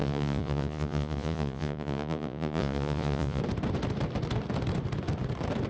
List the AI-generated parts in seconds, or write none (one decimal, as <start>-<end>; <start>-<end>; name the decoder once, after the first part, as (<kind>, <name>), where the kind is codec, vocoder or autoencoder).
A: 0.0-3.4 (vocoder, Vocos)